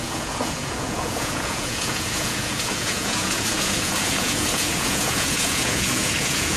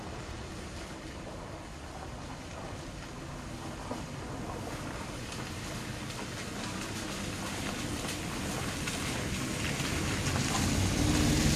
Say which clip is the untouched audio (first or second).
second